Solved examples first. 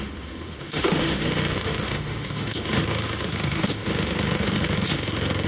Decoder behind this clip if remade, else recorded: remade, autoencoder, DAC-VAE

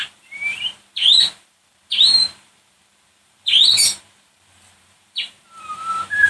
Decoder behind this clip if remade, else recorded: remade, vocoder, BigVGAN v2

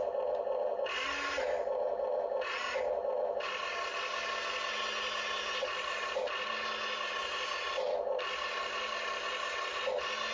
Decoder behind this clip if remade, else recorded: recorded